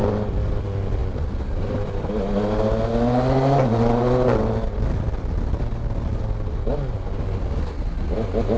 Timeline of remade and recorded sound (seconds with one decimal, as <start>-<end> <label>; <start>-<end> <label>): 0.0-8.6 recorded